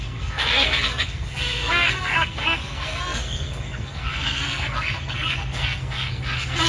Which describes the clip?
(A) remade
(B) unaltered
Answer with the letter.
A